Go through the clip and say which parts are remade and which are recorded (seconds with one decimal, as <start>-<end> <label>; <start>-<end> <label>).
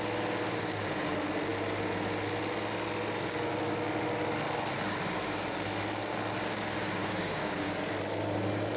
0.0-7.0 recorded; 7.0-7.7 remade; 7.7-8.8 recorded